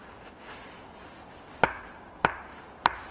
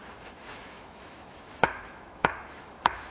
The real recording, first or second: first